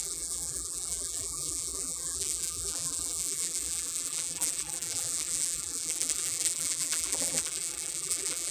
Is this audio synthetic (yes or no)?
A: yes